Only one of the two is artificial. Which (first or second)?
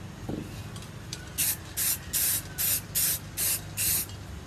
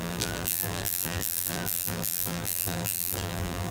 second